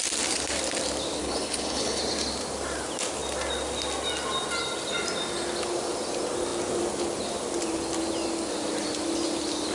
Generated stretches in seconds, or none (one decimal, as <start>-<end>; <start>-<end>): 1.2-2.0